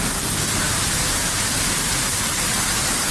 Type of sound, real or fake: real